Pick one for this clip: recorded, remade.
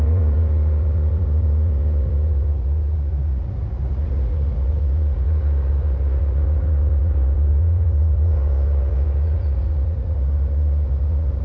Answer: remade